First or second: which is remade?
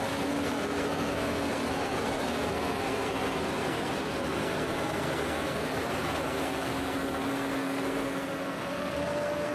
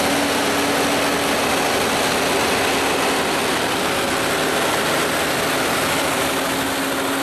first